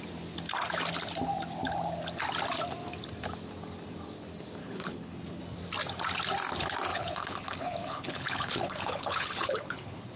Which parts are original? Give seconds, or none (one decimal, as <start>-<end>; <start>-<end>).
0.0-4.6; 5.4-6.9